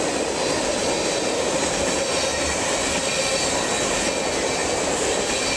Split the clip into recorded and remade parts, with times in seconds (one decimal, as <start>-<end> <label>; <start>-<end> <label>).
0.0-5.6 recorded